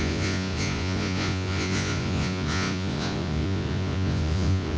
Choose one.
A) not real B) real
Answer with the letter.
A